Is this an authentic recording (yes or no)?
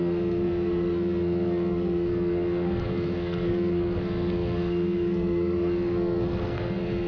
no